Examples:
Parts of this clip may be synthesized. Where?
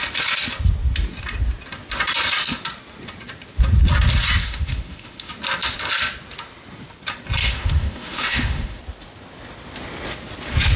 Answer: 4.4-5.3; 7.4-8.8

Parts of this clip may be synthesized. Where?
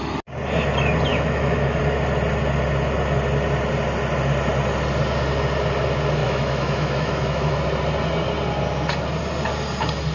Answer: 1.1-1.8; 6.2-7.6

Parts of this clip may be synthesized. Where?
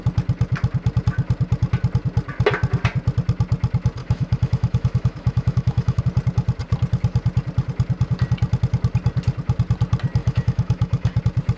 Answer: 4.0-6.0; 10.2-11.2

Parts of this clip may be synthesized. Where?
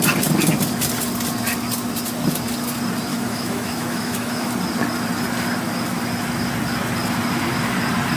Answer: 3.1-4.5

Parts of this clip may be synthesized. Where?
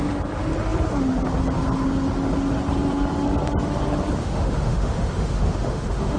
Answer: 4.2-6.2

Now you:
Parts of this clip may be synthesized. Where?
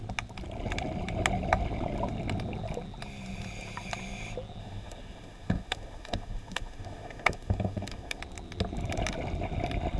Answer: 4.6-8.2